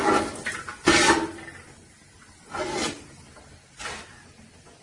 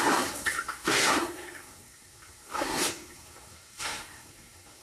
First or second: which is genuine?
first